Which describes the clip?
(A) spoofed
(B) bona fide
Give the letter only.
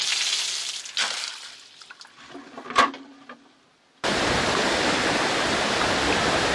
B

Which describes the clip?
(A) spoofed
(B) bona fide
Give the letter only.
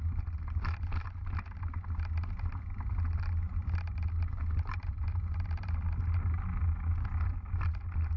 B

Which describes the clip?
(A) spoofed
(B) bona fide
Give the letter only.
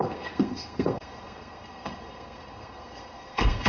A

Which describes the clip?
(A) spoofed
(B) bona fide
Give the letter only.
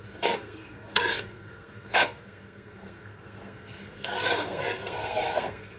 A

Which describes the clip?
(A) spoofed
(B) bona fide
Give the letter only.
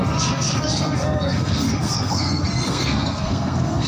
A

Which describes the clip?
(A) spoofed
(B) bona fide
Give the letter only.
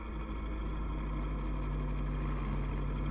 B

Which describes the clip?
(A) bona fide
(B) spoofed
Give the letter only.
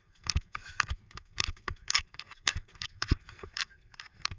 B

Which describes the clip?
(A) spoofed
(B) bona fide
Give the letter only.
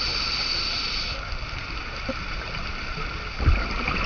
B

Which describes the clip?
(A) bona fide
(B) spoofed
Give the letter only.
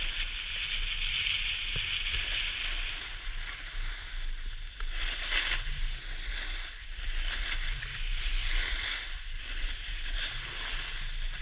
A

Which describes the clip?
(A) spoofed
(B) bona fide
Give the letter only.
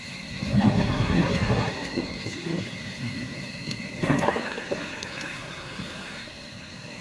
A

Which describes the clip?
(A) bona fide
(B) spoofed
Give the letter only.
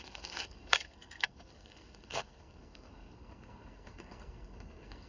B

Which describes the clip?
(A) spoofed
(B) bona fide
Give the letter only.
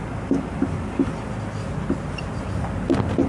B